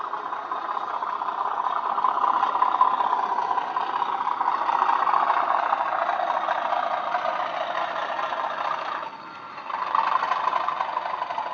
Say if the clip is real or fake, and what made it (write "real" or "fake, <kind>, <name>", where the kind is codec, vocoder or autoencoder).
real